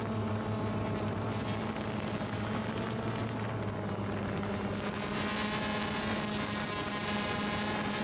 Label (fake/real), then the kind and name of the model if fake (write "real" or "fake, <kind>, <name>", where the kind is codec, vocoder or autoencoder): real